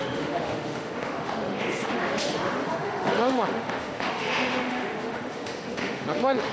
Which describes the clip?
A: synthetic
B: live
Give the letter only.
A